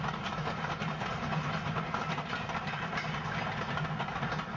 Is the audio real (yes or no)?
yes